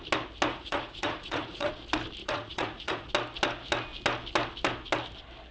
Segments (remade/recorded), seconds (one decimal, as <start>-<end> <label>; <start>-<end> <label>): 0.0-0.5 recorded; 0.5-1.7 remade; 1.7-2.2 recorded; 2.2-3.1 remade; 3.1-5.5 recorded